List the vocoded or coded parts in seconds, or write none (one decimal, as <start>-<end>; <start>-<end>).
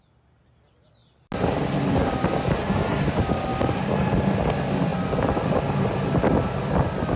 none